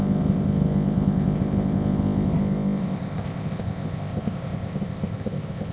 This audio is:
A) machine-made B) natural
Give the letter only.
A